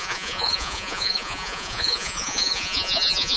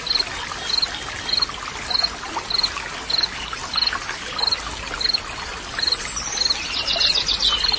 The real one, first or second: second